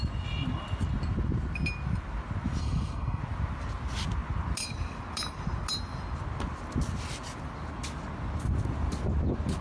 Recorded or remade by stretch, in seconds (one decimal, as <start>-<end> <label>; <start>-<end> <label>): 0.0-2.6 recorded; 2.6-3.2 remade; 3.2-9.6 recorded